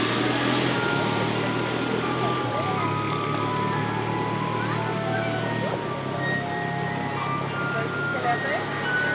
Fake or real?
real